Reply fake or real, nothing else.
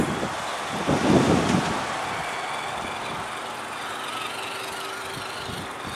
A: real